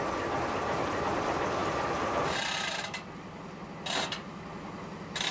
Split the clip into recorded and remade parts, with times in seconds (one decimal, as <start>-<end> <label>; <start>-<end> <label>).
0.0-1.6 recorded; 1.6-3.7 remade; 3.7-5.3 recorded